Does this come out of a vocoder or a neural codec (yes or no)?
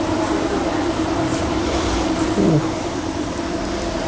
yes